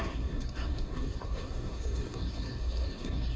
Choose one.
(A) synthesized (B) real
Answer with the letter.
A